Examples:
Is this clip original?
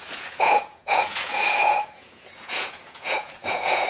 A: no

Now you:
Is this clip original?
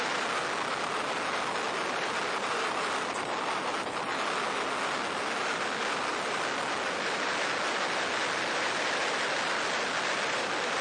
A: yes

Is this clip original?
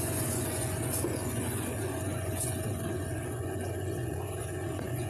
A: no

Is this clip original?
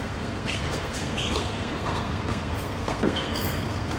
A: no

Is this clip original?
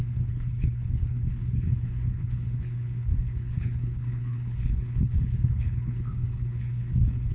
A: no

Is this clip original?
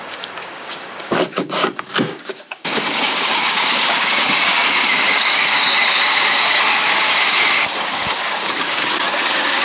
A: no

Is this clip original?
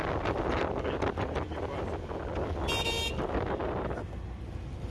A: yes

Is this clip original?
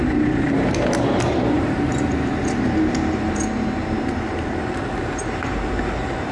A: no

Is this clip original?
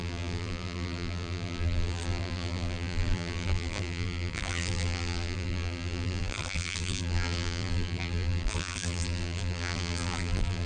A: no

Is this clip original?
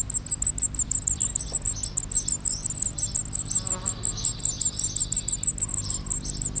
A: yes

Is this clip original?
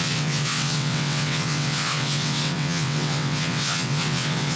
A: no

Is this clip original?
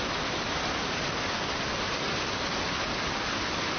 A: yes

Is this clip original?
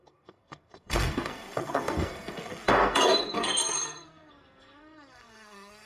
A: no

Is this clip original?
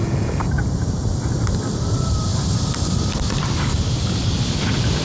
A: yes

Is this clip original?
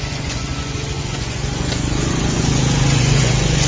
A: no